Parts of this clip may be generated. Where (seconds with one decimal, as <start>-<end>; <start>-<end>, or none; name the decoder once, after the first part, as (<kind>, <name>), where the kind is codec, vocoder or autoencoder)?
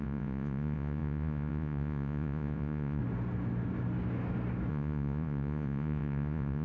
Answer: 0.0-3.0 (vocoder, Vocos); 4.7-6.6